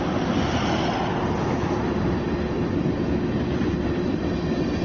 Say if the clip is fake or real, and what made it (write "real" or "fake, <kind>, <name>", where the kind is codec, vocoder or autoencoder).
real